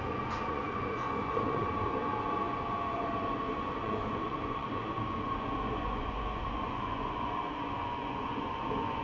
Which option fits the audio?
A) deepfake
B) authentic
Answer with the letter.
A